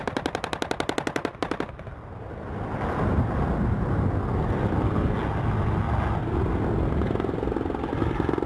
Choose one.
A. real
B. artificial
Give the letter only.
A